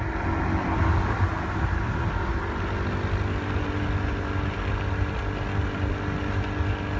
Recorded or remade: recorded